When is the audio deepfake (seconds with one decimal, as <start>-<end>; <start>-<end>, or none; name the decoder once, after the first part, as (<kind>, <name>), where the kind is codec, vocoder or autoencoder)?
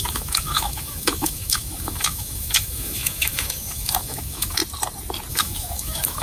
0.0-4.6 (autoencoder, DAC-VAE); 5.3-6.2